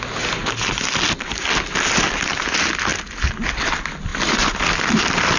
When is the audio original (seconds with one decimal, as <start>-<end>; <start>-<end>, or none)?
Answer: 0.0-5.4